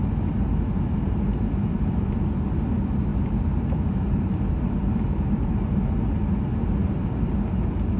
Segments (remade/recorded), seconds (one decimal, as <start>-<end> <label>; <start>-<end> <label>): 0.0-3.1 recorded; 3.1-6.2 remade; 6.2-6.8 recorded; 6.8-7.6 remade; 7.6-8.0 recorded